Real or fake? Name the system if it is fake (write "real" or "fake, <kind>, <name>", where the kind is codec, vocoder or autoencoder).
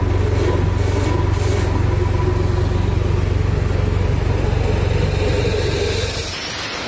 real